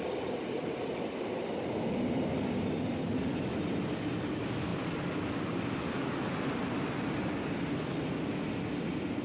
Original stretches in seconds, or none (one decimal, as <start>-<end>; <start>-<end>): 0.0-9.2